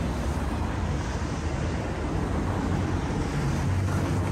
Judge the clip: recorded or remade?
recorded